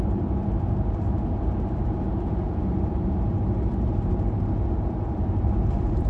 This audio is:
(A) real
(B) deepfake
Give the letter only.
B